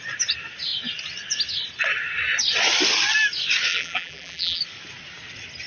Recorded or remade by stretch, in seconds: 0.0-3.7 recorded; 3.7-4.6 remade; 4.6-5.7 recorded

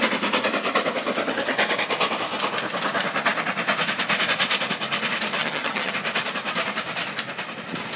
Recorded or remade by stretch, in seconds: 0.0-5.4 recorded; 5.4-5.9 remade; 5.9-8.0 recorded

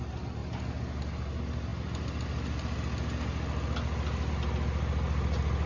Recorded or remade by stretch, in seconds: 0.0-5.7 recorded

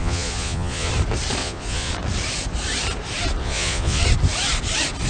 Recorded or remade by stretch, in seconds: 0.0-0.9 remade; 0.9-1.4 recorded; 1.4-1.9 remade; 1.9-3.4 recorded; 3.4-4.0 remade; 4.0-5.1 recorded

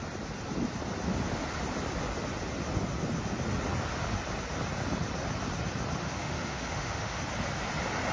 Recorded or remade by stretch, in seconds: 0.0-6.0 recorded; 6.0-7.2 remade; 7.2-8.1 recorded

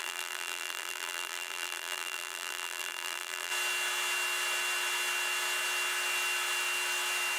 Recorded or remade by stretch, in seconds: 0.0-3.5 remade; 3.5-7.4 recorded